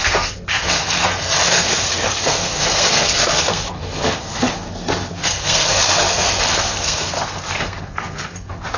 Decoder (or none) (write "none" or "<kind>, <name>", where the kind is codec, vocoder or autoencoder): codec, SNAC